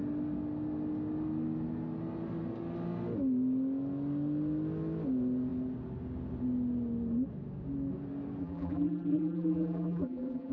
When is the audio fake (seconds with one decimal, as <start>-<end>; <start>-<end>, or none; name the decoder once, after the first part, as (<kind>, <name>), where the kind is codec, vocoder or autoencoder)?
8.4-10.5 (vocoder, BigVGAN v2)